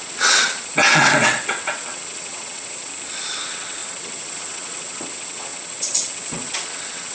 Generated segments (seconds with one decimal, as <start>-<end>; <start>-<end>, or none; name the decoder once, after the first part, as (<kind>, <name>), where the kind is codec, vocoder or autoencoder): 0.0-2.9 (vocoder, WaveNeXt); 3.4-7.1